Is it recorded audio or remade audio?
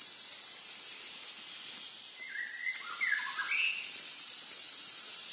recorded